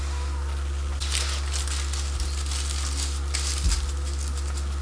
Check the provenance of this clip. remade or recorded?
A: recorded